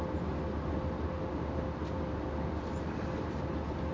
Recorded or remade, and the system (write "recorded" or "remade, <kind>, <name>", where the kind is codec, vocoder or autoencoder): recorded